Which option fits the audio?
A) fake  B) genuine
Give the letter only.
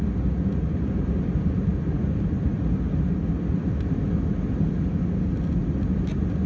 B